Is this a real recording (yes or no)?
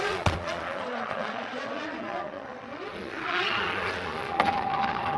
no